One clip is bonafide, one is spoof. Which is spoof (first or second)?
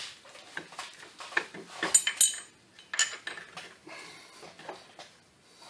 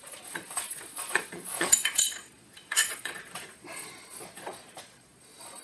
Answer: second